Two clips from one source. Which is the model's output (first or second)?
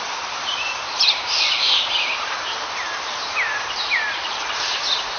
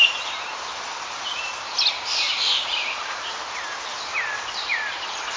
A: first